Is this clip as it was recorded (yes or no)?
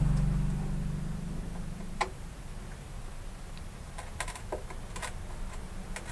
yes